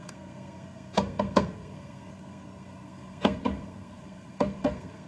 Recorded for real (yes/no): no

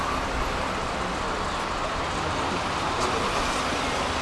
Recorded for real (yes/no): yes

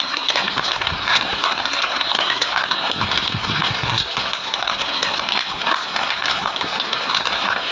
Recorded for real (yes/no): no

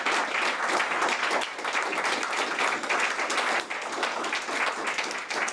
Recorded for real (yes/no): yes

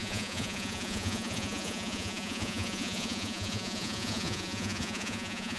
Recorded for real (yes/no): no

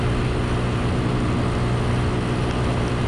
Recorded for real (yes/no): yes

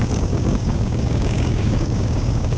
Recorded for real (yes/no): no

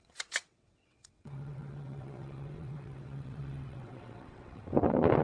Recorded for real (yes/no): no